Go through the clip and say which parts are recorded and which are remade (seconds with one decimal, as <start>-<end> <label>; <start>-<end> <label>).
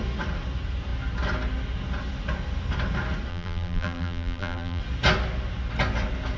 0.0-3.3 recorded; 3.3-4.8 remade; 4.8-6.4 recorded